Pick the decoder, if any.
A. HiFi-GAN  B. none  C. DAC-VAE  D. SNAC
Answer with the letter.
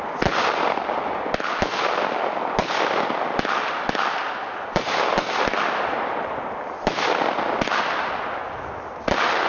B